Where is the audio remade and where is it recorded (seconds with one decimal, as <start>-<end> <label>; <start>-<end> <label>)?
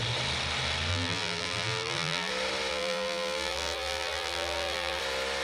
0.0-0.9 recorded; 0.9-2.3 remade; 2.3-2.7 recorded; 2.7-5.0 remade; 5.0-5.4 recorded